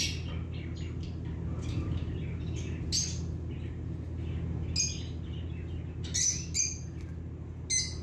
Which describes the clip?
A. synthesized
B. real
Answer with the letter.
B